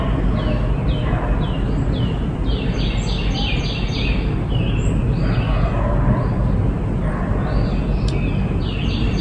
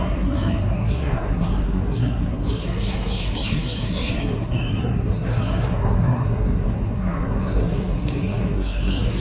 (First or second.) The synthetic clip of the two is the second